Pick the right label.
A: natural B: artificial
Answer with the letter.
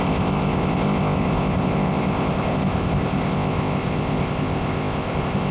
B